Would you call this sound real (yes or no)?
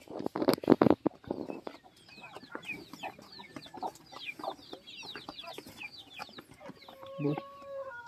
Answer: no